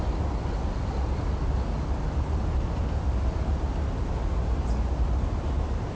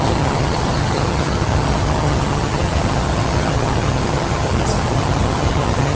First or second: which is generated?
second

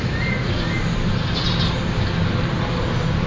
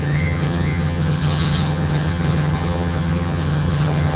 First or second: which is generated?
second